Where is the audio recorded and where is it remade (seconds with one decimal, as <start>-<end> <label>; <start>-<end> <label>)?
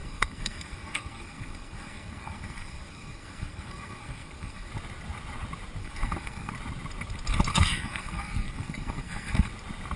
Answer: 0.0-4.7 remade; 4.7-5.8 recorded; 5.8-6.5 remade; 6.5-7.5 recorded; 7.5-9.5 remade; 9.5-10.0 recorded